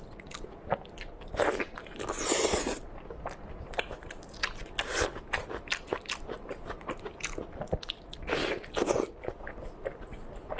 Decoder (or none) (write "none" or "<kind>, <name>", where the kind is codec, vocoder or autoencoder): none